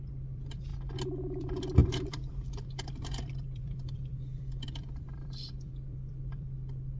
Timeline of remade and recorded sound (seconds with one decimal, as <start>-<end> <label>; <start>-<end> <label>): 0.0-0.7 remade; 0.7-1.4 recorded; 1.4-7.0 remade